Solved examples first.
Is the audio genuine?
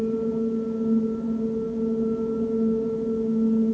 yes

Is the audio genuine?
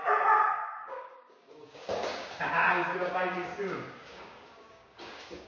no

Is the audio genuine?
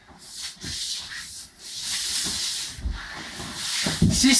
yes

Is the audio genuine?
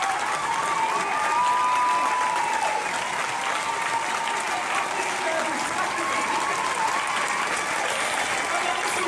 yes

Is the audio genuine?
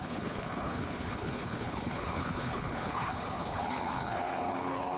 no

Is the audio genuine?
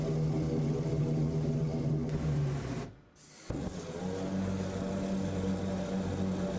yes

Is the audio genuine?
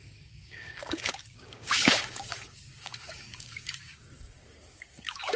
no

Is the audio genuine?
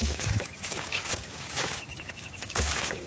no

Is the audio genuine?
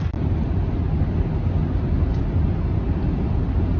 yes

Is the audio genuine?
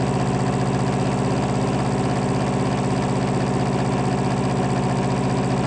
yes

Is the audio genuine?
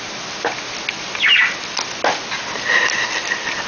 yes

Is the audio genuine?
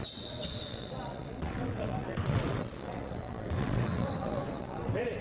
no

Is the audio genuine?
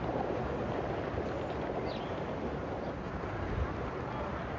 yes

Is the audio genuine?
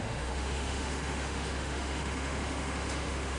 no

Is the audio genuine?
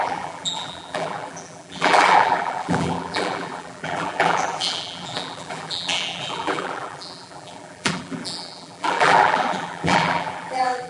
no